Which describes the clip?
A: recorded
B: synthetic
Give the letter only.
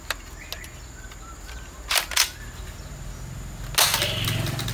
A